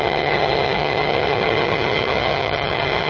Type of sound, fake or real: fake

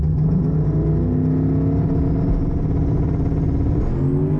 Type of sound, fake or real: real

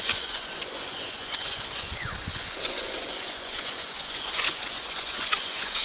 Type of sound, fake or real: fake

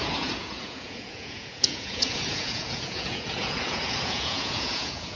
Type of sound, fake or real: fake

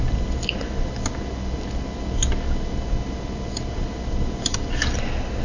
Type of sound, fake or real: real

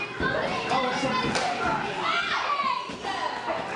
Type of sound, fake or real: real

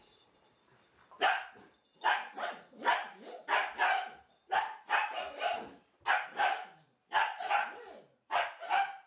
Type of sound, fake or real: fake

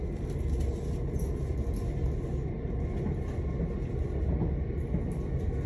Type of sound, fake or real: real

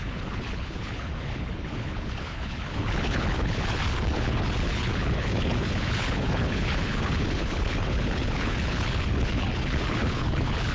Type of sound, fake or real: fake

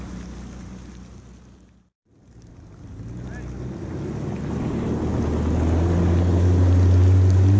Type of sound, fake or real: real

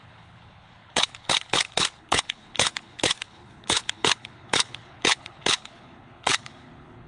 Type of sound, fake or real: fake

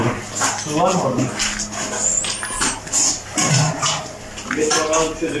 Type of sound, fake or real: real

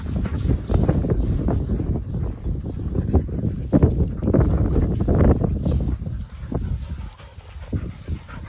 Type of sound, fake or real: real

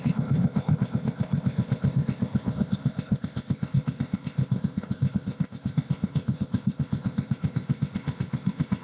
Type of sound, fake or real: fake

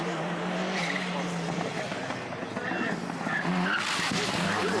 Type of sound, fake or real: real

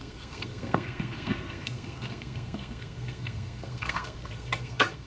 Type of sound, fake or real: fake